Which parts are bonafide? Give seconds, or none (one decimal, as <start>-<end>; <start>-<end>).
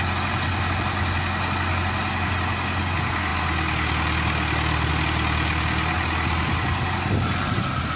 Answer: 0.0-8.0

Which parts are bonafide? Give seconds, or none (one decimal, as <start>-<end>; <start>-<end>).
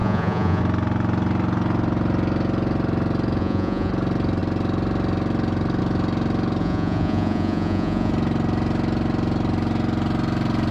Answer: 0.6-3.4; 3.9-6.6; 8.1-10.7